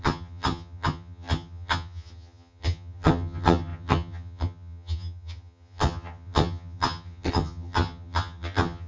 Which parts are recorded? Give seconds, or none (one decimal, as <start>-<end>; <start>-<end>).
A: none